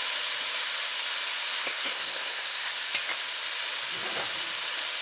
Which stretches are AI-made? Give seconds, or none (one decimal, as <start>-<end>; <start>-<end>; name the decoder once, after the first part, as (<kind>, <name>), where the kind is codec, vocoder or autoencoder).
1.6-2.7 (codec, SNAC)